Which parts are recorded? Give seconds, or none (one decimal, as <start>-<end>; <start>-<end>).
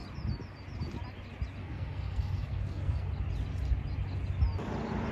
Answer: 0.0-1.6; 3.1-5.1